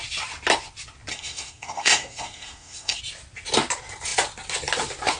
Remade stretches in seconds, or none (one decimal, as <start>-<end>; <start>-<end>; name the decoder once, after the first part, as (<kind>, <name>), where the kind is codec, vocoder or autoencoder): 1.1-3.0 (codec, SNAC)